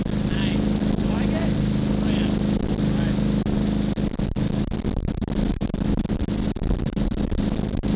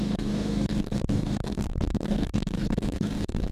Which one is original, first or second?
first